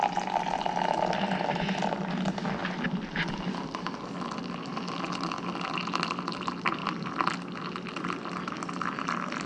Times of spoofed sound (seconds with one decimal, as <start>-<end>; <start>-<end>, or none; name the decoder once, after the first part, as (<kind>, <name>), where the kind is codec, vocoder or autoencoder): none